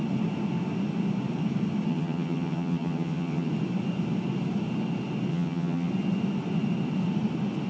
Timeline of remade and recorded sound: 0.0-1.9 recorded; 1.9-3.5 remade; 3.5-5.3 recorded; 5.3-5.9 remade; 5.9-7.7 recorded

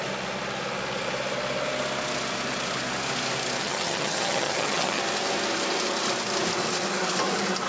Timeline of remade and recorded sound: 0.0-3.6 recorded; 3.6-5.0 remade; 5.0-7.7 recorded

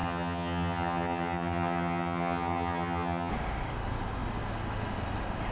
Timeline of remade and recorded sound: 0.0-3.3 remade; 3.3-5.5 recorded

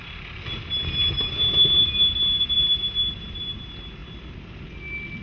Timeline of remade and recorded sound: 0.0-5.2 recorded

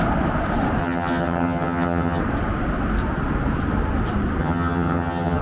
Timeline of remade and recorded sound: 0.0-0.8 recorded; 0.8-2.2 remade; 2.2-4.4 recorded; 4.4-5.4 remade

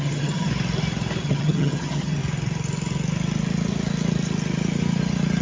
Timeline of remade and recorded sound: 0.0-0.5 remade; 0.5-1.2 recorded; 1.2-2.2 remade; 2.2-5.4 recorded

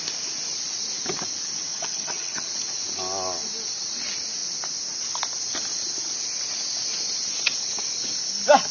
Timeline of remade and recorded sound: 0.0-1.7 recorded; 1.7-2.5 remade; 2.5-8.7 recorded

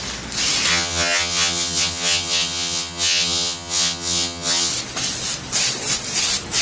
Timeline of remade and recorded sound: 0.0-0.7 recorded; 0.7-4.7 remade; 4.7-6.6 recorded